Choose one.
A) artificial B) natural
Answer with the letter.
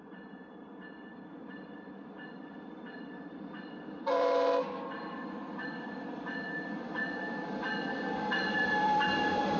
A